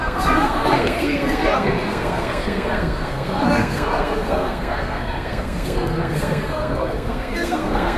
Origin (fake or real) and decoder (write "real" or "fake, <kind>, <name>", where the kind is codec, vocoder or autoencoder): fake, codec, SNAC